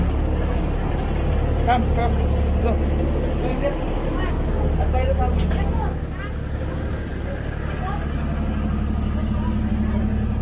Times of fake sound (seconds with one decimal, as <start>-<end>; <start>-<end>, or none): none